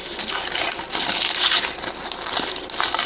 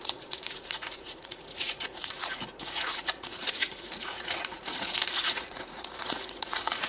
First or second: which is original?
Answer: first